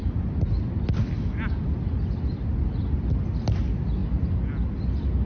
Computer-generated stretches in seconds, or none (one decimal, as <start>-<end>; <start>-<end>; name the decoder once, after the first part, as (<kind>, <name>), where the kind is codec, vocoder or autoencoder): none